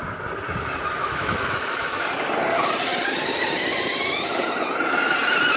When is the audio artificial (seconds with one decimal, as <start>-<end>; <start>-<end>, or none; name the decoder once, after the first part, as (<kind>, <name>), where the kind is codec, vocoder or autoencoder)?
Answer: 1.0-2.1 (autoencoder, DAC-VAE)